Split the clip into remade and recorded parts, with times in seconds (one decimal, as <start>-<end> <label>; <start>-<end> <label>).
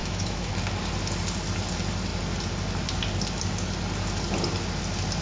0.0-0.5 remade; 0.5-5.2 recorded